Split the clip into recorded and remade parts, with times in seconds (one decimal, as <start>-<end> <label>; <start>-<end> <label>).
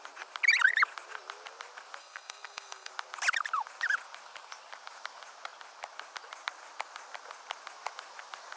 0.0-2.0 recorded; 2.0-2.9 remade; 2.9-8.6 recorded